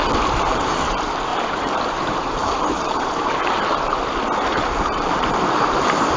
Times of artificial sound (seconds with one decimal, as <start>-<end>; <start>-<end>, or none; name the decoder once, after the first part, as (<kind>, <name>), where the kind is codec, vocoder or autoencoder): 1.3-3.3 (vocoder, BigVGAN v2); 4.5-5.8